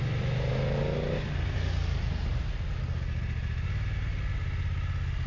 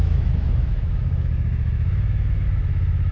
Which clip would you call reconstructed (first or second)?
second